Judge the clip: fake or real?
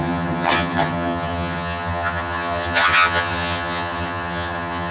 fake